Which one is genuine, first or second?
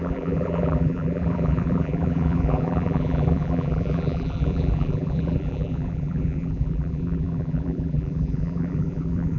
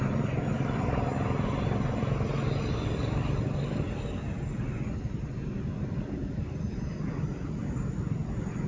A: second